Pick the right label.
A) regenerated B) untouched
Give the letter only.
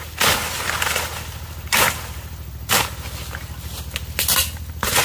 B